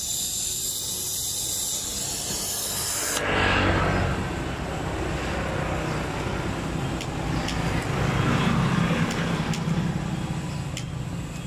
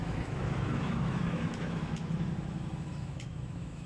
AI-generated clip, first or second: second